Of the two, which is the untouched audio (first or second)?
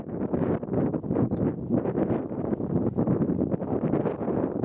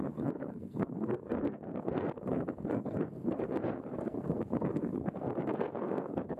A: first